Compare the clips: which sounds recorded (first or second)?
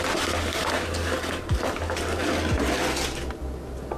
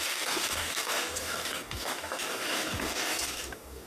first